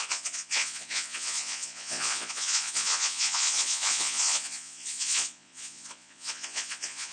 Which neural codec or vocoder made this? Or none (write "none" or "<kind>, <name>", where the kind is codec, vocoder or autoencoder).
vocoder, Vocos